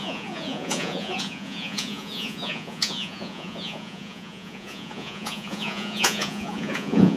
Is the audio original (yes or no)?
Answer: no